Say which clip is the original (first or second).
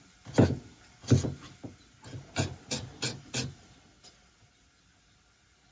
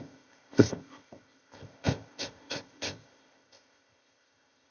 first